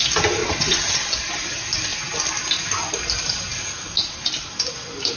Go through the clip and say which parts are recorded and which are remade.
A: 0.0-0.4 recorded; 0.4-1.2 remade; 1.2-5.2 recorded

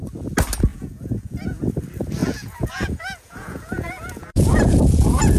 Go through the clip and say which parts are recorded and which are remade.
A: 0.0-0.7 recorded; 0.7-1.7 remade; 1.7-2.2 recorded; 2.2-5.4 remade

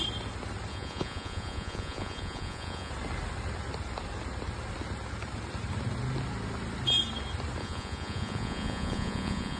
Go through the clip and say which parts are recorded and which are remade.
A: 0.0-0.7 recorded; 0.7-2.9 remade; 2.9-7.6 recorded; 7.6-9.6 remade